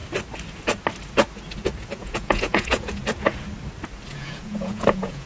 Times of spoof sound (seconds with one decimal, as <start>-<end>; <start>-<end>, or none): 2.0-3.0; 4.1-5.3